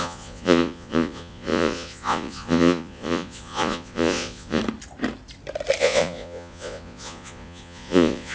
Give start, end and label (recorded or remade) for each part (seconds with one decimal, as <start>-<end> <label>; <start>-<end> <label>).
0.0-4.6 remade; 4.6-5.8 recorded; 5.8-8.3 remade